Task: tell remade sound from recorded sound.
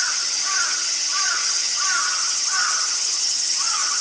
remade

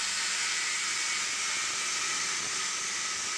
recorded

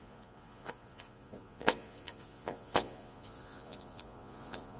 remade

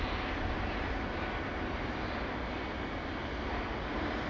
recorded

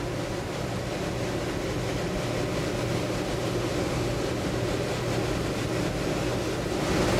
recorded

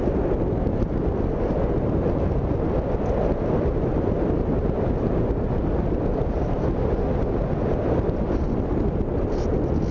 recorded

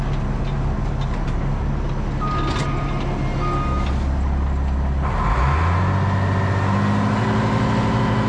recorded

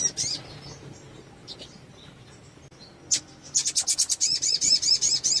recorded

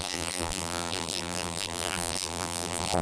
remade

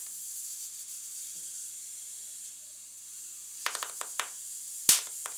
recorded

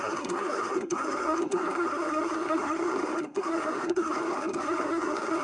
remade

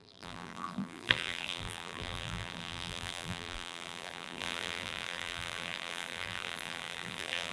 remade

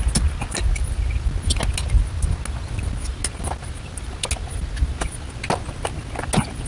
recorded